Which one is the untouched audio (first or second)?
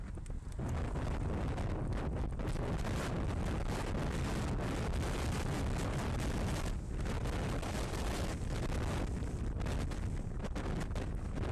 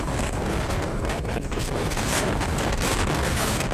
first